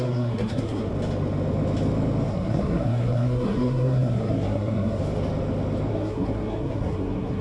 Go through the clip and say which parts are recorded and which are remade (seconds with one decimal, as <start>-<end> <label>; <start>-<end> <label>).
0.0-0.9 remade; 0.9-2.3 recorded; 2.3-5.0 remade; 5.0-5.9 recorded; 5.9-7.4 remade